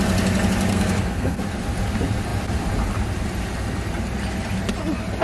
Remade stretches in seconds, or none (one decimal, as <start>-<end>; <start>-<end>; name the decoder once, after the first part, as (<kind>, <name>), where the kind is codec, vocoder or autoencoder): 0.7-1.4 (codec, SNAC)